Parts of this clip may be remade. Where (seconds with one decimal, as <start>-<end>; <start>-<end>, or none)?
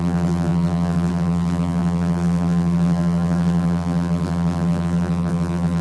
0.0-5.8